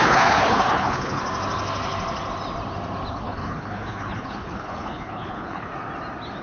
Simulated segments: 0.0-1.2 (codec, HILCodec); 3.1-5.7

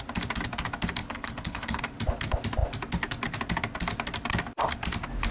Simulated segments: 1.0-1.8 (codec, HILCodec)